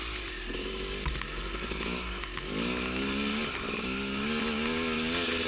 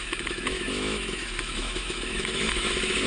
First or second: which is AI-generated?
second